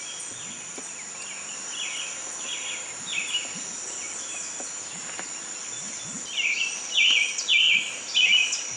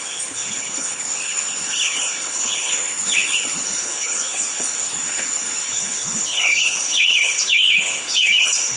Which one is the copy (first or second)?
second